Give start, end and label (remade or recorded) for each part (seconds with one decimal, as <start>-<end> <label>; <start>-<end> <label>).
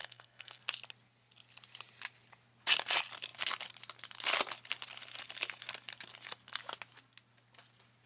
0.0-0.6 remade; 0.6-8.1 recorded